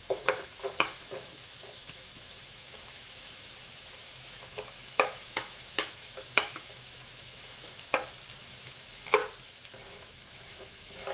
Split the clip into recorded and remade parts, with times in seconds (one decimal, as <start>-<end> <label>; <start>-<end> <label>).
0.0-7.9 remade; 7.9-8.4 recorded; 8.4-9.2 remade; 9.2-9.9 recorded; 9.9-11.1 remade